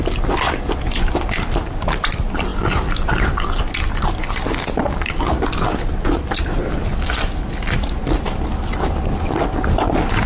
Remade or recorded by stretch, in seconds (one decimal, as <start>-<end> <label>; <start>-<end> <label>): 0.0-10.3 recorded